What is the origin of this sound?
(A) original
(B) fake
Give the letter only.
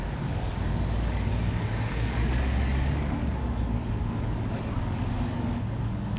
B